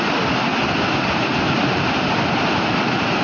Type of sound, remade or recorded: recorded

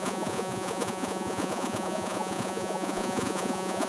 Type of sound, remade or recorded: remade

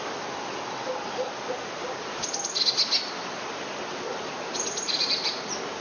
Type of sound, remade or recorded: recorded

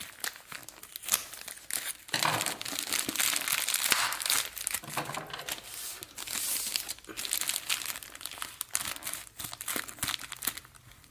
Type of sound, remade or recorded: recorded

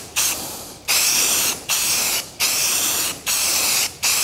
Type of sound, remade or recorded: remade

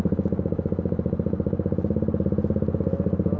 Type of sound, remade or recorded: recorded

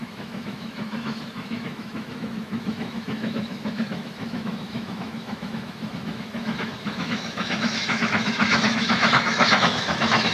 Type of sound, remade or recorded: remade